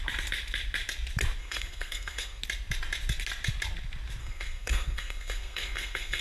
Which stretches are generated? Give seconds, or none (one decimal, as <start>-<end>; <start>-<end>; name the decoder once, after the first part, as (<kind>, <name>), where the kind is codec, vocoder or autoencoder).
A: 1.4-2.4 (codec, SNAC); 4.2-6.2